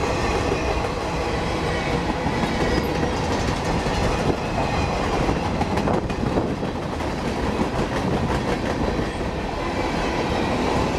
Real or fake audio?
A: real